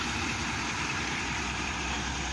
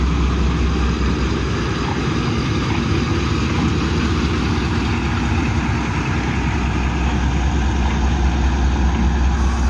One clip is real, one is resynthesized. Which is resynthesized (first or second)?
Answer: first